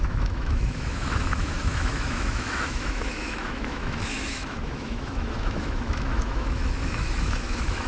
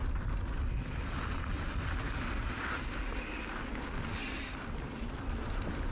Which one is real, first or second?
second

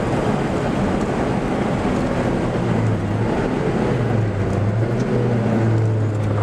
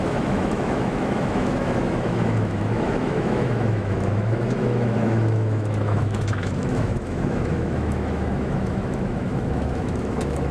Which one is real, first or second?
first